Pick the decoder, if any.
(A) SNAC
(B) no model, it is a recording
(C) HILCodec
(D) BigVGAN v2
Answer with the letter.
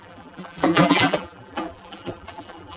D